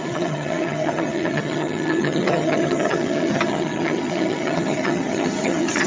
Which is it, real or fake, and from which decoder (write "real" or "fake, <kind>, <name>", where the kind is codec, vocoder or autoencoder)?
fake, vocoder, HiFi-GAN